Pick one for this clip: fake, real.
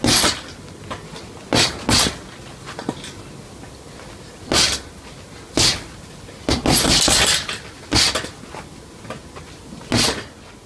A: real